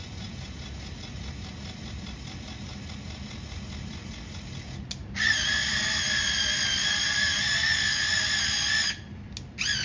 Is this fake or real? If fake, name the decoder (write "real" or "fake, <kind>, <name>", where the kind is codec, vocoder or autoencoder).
real